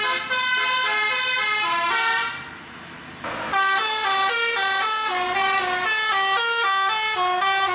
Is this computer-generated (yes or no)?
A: no